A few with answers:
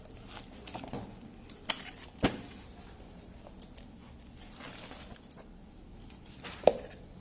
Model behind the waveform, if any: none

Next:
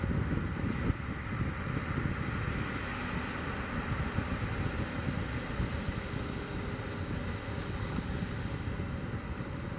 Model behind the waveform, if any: none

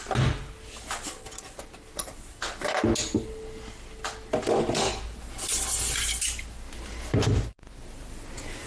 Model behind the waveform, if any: none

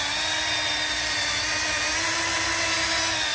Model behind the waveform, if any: none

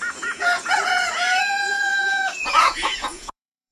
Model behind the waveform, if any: vocoder, Vocos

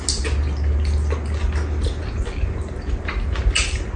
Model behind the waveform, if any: none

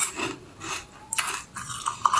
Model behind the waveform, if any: vocoder, BigVGAN v2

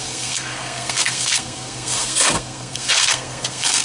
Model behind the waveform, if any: codec, SNAC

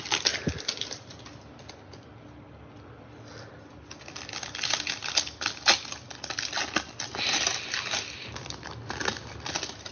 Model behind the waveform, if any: none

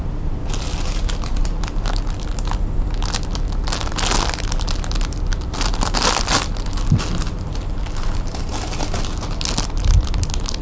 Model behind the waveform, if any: none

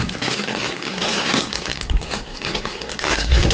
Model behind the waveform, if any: codec, SNAC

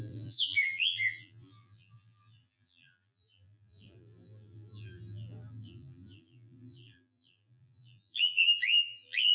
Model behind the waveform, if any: vocoder, BigVGAN v2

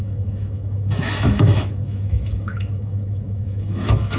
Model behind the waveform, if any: autoencoder, DAC-VAE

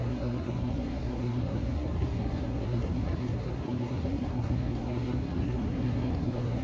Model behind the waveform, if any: codec, SNAC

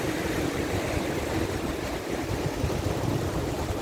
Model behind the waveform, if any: none